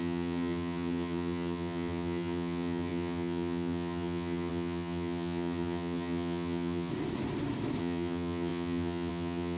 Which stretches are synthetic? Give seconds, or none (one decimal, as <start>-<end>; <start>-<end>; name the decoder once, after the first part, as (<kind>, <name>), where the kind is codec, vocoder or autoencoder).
0.0-6.9 (vocoder, HiFi-GAN); 7.8-9.6